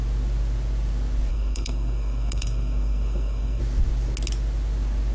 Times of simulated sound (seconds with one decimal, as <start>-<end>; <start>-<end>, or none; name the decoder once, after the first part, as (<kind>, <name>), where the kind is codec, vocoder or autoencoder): 1.3-3.6 (codec, SNAC)